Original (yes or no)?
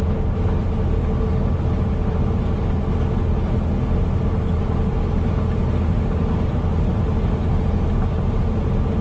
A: yes